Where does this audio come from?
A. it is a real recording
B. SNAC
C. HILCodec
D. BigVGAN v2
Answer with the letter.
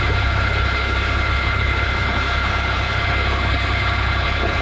C